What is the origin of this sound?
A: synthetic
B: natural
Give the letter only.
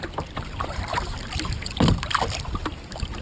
A